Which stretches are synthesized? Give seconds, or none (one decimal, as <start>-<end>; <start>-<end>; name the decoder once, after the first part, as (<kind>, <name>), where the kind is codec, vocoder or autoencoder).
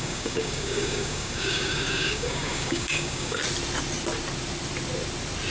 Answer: 0.0-3.4 (codec, DAC)